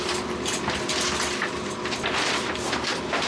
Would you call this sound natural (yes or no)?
yes